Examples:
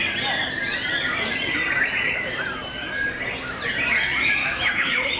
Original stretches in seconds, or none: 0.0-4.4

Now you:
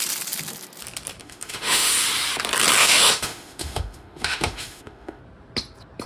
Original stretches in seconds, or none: 0.0-1.2; 1.9-2.8; 5.2-6.1

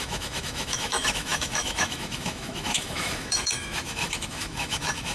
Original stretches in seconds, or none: none

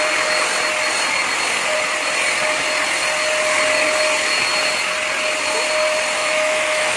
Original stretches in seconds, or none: 0.0-6.2

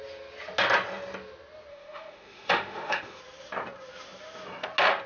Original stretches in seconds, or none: 0.0-1.7; 3.2-5.1